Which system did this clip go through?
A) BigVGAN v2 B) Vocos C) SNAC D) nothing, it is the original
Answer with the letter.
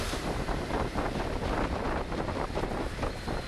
D